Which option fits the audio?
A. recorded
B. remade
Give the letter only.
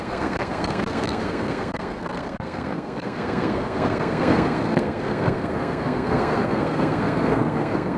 B